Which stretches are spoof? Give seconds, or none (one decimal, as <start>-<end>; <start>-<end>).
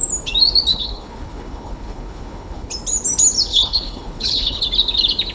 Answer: 0.7-2.7; 3.5-4.6